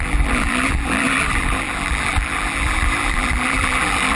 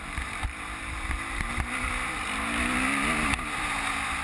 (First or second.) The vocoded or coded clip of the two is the first